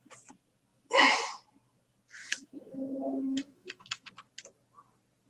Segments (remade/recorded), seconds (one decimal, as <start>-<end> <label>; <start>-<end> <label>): 0.0-0.7 recorded; 0.7-1.4 remade; 1.4-2.2 recorded; 2.2-4.1 remade; 4.1-5.3 recorded